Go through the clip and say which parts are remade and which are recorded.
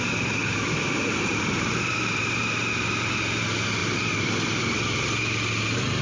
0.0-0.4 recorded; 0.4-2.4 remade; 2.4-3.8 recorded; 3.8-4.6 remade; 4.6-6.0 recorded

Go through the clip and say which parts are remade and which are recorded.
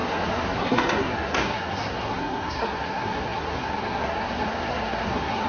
0.0-5.5 remade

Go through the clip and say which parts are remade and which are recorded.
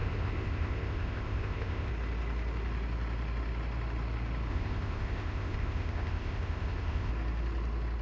0.0-1.9 remade; 1.9-4.5 recorded; 4.5-7.1 remade; 7.1-8.0 recorded